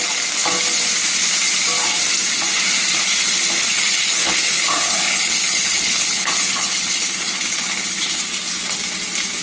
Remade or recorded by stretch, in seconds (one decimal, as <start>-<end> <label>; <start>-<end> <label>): 0.0-3.6 recorded; 3.6-8.2 remade; 8.2-9.4 recorded